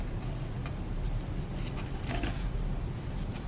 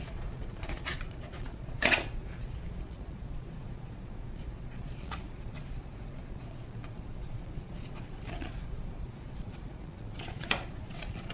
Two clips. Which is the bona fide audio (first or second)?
first